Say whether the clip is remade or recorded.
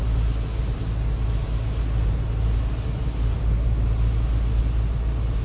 recorded